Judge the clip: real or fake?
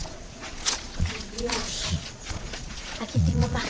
fake